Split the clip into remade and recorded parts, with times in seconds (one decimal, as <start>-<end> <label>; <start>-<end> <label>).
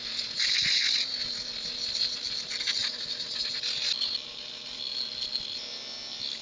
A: 0.0-6.4 recorded